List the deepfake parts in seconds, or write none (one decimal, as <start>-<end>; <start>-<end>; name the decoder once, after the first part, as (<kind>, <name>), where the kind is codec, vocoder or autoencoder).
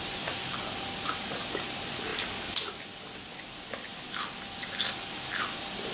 none